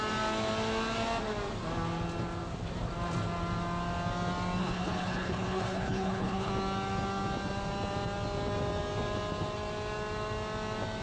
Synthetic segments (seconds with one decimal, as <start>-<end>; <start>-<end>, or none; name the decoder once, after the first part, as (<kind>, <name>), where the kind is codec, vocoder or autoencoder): 4.6-6.5 (codec, HILCodec)